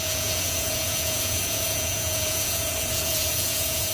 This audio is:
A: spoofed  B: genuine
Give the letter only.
A